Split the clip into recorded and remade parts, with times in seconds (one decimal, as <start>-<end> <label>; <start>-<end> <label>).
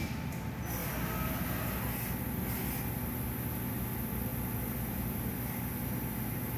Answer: 0.0-6.6 recorded